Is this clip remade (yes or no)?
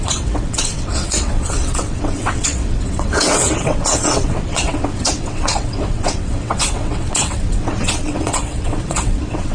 yes